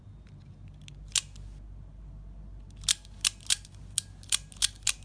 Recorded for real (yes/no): yes